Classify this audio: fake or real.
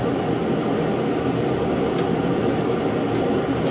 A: fake